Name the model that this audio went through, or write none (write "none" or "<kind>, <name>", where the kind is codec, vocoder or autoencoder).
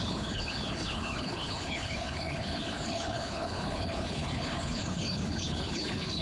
codec, HILCodec